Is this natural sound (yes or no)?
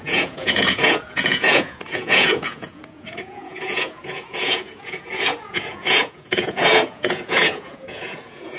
no